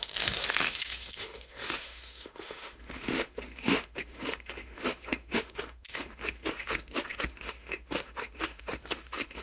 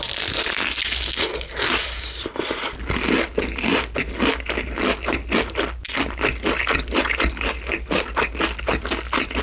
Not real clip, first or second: first